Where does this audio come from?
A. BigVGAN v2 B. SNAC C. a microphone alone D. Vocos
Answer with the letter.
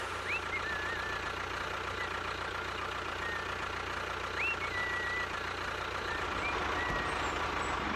C